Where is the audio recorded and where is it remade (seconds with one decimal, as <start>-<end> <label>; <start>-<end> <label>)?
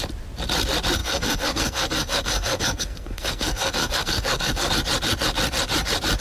0.0-1.0 recorded; 1.0-4.7 remade; 4.7-6.2 recorded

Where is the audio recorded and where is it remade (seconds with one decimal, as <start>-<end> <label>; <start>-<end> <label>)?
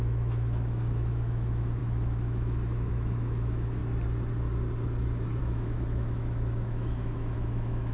0.0-3.8 remade; 3.8-5.4 recorded; 5.4-7.9 remade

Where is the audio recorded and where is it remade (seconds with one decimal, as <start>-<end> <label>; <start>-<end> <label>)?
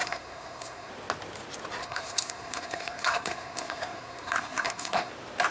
0.0-0.9 remade; 0.9-1.8 recorded; 1.8-5.1 remade; 5.1-5.5 recorded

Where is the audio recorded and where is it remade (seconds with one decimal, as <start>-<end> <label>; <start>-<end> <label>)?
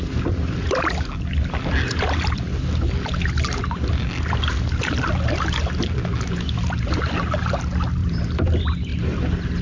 0.0-8.0 recorded; 8.0-8.5 remade; 8.5-9.6 recorded